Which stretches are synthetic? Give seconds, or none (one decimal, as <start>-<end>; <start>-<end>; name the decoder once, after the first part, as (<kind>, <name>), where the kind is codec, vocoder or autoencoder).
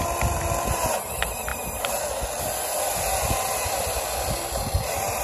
none